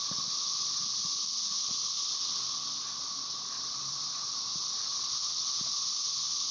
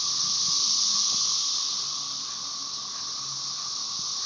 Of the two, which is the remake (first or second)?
first